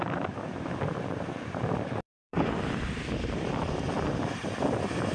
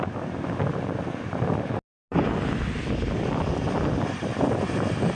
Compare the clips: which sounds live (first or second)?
second